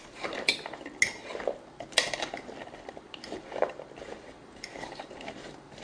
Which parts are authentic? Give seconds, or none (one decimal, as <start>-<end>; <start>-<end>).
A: 0.5-4.0